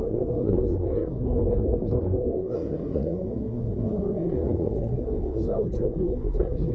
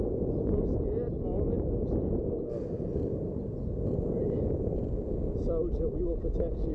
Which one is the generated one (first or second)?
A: first